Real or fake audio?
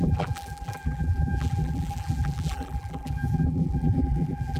fake